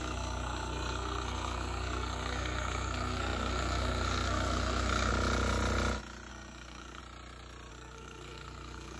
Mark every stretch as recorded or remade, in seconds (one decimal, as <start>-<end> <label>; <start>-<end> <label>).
0.0-5.1 remade; 5.1-6.3 recorded; 6.3-7.0 remade; 7.0-7.7 recorded; 7.7-9.0 remade